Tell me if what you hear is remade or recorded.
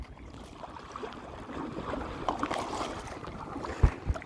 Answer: remade